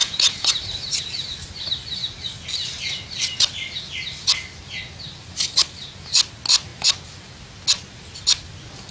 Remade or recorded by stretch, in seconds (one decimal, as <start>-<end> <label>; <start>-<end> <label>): 0.0-0.5 remade; 0.5-8.9 recorded